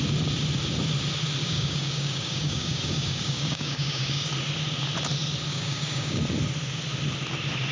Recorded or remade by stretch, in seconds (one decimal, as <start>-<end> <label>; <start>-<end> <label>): 0.0-1.4 recorded; 1.4-4.3 remade; 4.3-5.5 recorded; 5.5-6.2 remade; 6.2-7.7 recorded